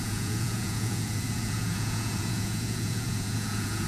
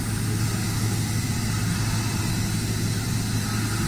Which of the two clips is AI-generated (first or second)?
first